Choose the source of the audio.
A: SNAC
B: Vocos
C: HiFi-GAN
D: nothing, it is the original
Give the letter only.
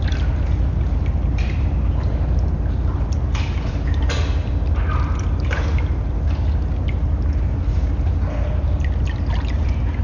D